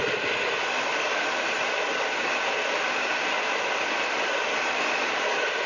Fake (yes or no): no